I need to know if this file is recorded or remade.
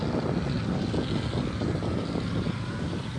recorded